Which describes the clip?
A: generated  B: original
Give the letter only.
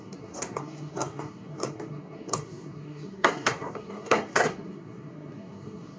A